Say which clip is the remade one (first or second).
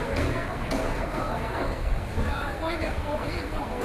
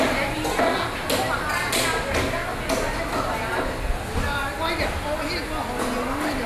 first